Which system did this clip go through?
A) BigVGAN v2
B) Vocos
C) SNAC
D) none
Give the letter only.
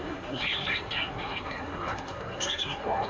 C